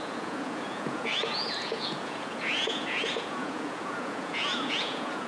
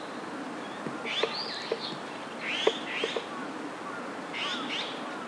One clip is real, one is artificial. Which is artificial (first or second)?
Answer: first